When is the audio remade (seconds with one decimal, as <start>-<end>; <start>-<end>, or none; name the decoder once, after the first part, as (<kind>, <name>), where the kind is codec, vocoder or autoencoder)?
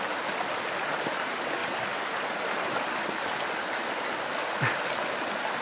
none